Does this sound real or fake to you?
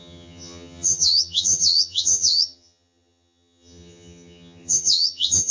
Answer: fake